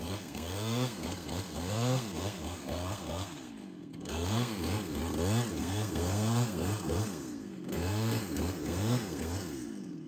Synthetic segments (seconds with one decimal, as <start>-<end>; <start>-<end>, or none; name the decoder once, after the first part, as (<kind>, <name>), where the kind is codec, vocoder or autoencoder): 0.0-5.0 (codec, SNAC); 5.5-10.1